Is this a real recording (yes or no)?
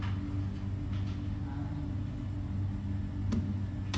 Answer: yes